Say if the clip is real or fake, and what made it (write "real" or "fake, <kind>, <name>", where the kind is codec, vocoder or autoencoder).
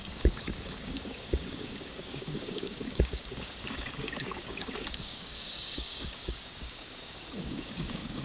fake, codec, DAC